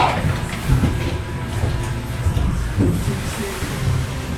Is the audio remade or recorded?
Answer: recorded